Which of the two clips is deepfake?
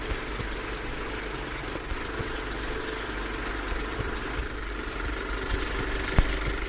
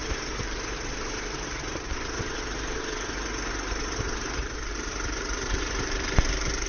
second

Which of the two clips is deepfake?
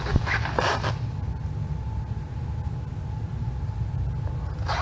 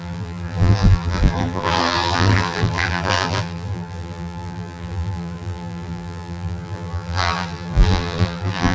second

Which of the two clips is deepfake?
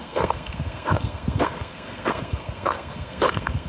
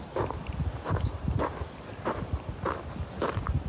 first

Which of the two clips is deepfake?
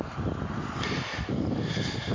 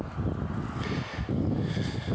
first